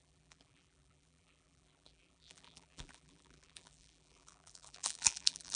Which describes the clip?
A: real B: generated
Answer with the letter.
B